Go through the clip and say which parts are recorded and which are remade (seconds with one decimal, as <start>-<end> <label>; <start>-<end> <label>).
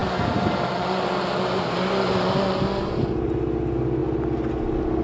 0.0-5.0 recorded